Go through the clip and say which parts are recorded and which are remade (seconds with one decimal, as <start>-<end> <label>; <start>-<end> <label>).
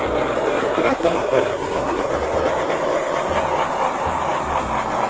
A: 0.0-0.6 recorded; 0.6-2.1 remade; 2.1-5.1 recorded